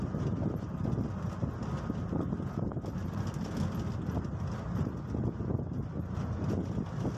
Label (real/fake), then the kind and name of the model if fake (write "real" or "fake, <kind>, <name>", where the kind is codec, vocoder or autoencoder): real